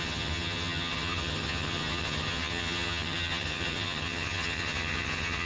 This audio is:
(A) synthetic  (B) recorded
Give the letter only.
A